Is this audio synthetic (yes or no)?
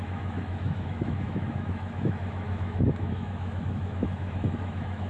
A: yes